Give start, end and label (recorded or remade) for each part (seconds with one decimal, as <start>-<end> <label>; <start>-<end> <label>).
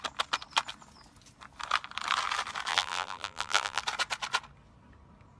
0.0-2.7 recorded; 2.7-3.8 remade; 3.8-5.4 recorded